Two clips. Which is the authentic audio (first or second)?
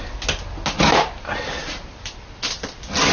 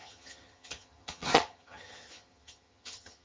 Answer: first